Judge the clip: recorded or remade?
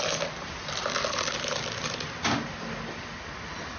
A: recorded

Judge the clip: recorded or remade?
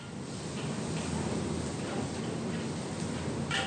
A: recorded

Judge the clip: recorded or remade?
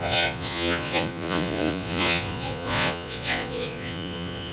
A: remade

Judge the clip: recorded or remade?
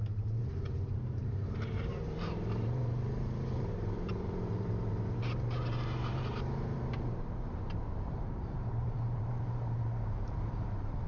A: remade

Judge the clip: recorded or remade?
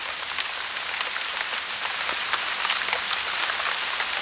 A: recorded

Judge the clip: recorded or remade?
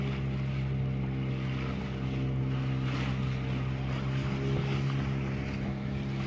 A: recorded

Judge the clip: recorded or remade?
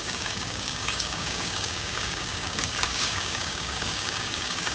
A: remade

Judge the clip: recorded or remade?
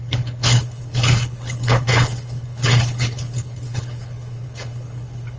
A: remade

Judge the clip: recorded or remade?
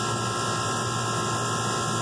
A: recorded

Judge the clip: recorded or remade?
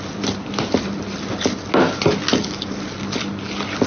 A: recorded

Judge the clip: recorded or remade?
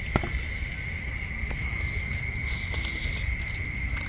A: recorded